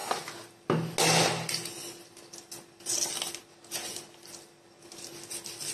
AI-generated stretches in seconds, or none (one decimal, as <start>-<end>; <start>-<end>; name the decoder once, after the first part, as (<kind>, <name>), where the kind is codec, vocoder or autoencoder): none